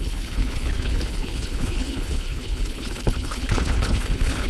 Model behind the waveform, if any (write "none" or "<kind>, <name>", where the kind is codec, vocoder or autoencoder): codec, HILCodec